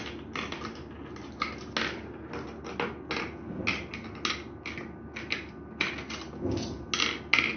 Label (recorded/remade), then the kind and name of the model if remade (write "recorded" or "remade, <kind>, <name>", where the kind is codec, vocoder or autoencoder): recorded